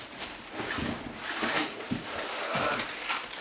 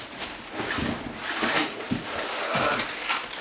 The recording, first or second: second